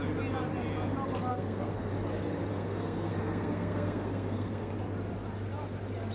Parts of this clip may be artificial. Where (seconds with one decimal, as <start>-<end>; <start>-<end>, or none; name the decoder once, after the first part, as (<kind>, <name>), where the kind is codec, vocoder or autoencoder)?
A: 1.3-1.9 (codec, SNAC); 2.5-4.7